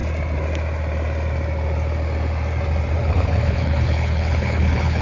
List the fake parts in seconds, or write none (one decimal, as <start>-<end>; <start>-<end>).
3.0-5.0